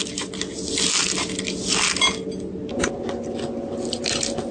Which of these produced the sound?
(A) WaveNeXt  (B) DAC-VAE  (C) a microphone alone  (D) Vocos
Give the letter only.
C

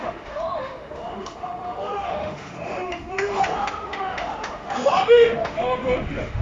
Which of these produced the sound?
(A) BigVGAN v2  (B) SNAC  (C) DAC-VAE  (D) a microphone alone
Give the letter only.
C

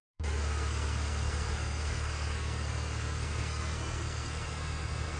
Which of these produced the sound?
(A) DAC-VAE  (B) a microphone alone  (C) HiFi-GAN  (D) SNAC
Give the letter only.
D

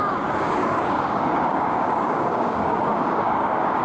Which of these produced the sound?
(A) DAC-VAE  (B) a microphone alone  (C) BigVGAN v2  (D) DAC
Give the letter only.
D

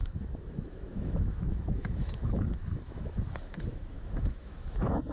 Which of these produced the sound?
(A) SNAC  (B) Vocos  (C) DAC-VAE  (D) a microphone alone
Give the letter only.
C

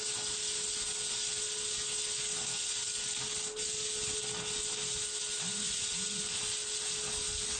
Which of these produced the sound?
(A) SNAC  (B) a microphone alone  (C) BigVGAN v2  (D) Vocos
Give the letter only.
B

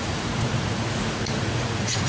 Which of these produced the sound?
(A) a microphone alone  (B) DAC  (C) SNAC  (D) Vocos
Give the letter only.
D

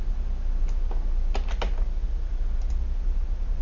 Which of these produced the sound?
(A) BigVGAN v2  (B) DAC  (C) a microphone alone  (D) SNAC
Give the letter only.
C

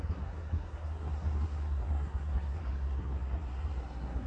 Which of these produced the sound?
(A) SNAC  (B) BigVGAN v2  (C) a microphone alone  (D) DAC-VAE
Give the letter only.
A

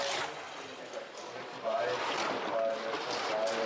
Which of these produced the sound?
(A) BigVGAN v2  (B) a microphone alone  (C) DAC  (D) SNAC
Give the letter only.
B